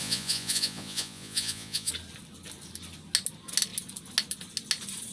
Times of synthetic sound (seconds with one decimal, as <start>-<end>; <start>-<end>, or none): 0.0-1.9